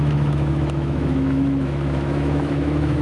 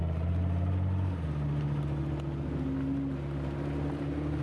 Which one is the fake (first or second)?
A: first